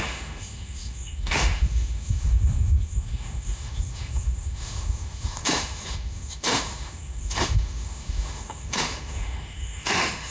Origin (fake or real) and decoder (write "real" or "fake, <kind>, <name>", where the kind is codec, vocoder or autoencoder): fake, autoencoder, DAC-VAE